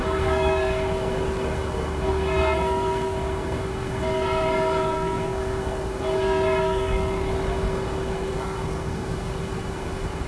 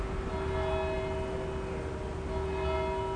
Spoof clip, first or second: first